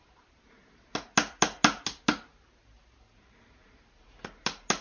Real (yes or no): yes